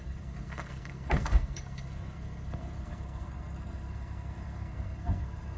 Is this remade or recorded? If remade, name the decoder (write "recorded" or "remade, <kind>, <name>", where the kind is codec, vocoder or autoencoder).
remade, codec, SNAC